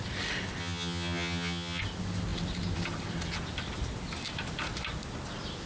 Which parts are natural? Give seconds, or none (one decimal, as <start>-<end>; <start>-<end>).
0.0-0.6; 1.8-5.7